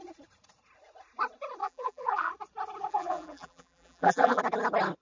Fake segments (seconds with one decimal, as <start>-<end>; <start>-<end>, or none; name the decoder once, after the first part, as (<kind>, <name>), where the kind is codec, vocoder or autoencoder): 1.6-2.3 (vocoder, BigVGAN v2); 2.9-4.4